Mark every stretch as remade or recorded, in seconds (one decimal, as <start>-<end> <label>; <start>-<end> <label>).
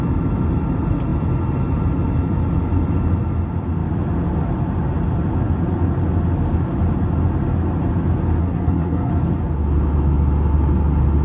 0.0-8.4 recorded; 8.4-9.1 remade; 9.1-11.2 recorded